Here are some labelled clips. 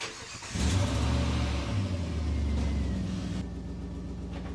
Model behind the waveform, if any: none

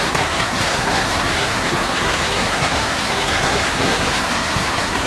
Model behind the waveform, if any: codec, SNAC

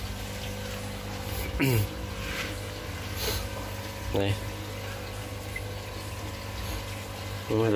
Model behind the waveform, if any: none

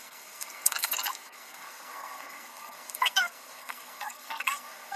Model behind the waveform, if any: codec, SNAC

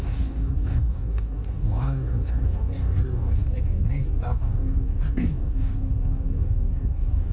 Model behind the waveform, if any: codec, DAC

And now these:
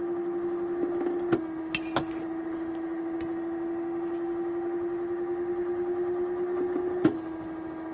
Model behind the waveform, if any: none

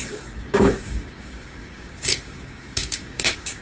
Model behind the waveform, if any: codec, DAC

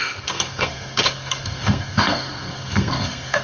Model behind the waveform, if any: codec, SNAC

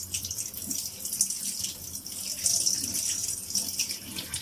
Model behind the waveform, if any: none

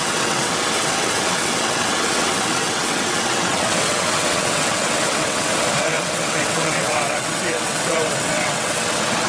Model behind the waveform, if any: vocoder, WaveNeXt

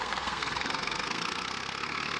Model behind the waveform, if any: codec, SNAC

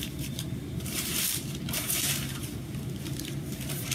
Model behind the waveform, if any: vocoder, BigVGAN v2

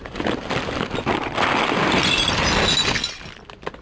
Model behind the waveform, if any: none